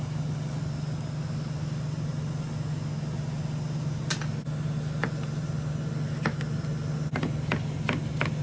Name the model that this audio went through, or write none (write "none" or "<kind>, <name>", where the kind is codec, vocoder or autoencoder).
none